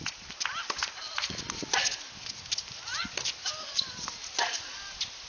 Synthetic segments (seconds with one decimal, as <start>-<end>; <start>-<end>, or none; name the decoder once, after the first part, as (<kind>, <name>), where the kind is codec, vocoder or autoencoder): none